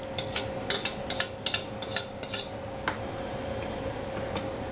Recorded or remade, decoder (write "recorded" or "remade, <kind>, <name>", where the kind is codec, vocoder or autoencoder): recorded